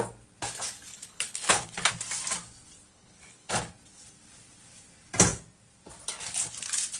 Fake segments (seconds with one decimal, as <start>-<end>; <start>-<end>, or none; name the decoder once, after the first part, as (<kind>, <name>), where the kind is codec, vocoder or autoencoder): 0.9-1.9 (codec, HILCodec); 2.9-3.6